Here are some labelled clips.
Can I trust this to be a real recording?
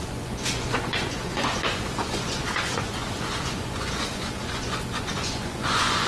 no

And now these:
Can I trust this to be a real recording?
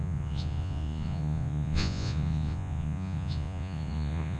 no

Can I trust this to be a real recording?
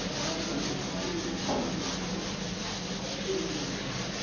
yes